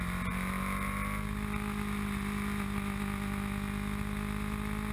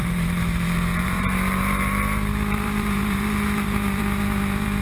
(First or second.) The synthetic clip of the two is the second